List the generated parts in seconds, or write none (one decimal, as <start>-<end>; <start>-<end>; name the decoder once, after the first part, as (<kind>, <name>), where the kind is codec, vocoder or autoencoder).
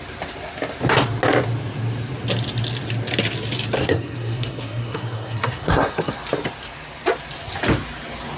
3.8-6.1 (codec, SNAC)